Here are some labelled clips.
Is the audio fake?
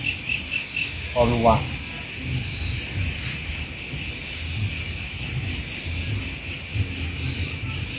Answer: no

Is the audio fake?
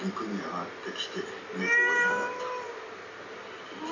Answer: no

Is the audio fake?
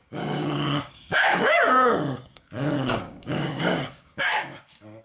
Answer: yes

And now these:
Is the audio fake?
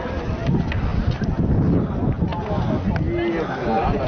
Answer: no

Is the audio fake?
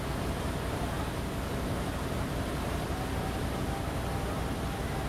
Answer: no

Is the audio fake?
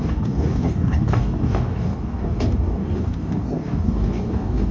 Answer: yes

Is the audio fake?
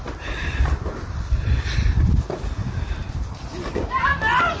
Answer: no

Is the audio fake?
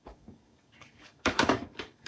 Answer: yes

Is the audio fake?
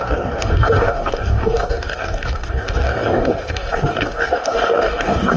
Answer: yes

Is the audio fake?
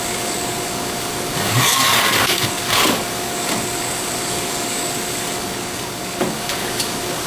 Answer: yes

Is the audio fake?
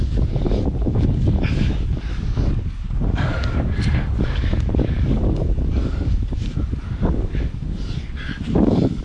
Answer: yes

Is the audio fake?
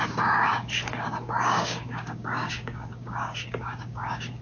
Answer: yes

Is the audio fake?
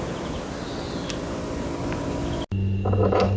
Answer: no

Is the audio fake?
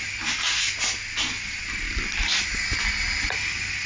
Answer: no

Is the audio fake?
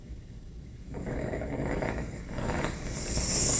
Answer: yes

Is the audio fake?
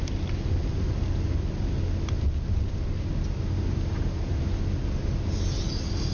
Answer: no